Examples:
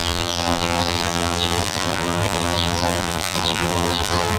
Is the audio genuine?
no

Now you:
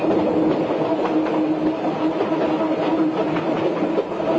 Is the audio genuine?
yes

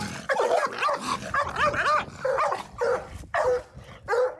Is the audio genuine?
yes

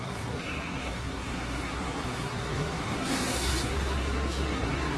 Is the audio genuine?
no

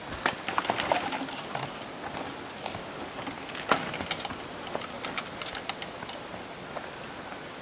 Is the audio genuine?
yes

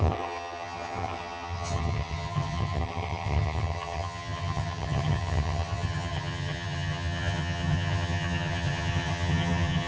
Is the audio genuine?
no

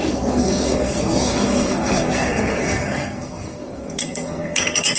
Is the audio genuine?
no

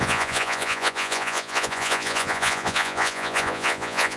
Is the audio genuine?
no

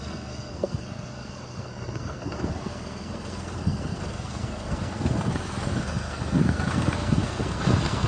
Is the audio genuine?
no